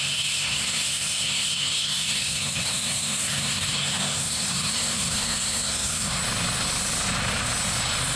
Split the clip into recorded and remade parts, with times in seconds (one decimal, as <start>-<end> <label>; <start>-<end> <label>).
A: 0.0-6.2 remade; 6.2-8.2 recorded